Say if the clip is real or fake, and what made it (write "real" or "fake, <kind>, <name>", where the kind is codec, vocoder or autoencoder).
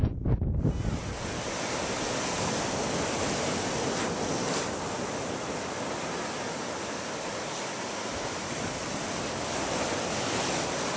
real